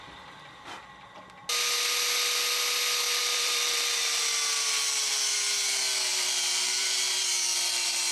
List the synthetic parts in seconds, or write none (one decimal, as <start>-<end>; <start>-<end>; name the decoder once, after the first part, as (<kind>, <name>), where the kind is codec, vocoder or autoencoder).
3.2-4.2 (vocoder, BigVGAN v2); 6.1-8.1